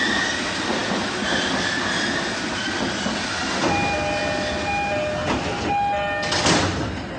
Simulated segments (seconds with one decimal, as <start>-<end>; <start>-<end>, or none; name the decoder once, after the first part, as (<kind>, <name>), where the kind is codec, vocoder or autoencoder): none